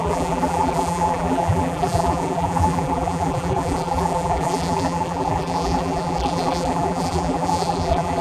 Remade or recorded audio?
remade